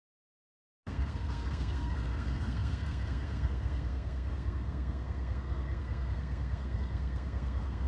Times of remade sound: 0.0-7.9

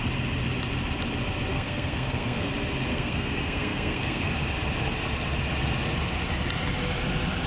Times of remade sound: 1.5-2.5; 2.9-4.3

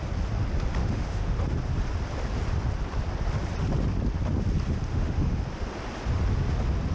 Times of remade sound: 0.8-1.4; 4.9-5.4